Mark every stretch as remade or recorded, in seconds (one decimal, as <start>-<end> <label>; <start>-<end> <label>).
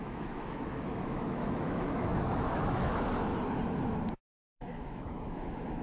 0.0-3.3 remade; 3.3-4.2 recorded; 4.2-5.8 remade